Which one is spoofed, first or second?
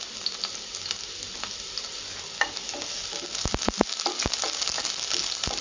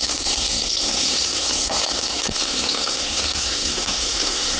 second